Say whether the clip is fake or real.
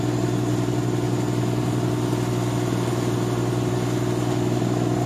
real